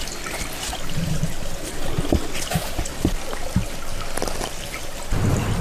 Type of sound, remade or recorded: recorded